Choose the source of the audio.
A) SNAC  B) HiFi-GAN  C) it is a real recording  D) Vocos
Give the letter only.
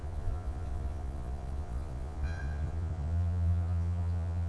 D